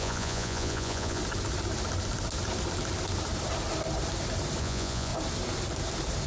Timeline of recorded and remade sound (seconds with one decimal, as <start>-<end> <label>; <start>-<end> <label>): 0.0-1.2 remade; 1.2-4.6 recorded; 4.6-5.1 remade; 5.1-6.3 recorded